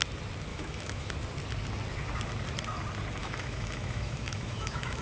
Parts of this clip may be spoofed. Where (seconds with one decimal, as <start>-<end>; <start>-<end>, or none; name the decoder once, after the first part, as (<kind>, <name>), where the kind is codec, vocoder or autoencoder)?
0.5-1.1 (autoencoder, DAC-VAE); 3.2-5.0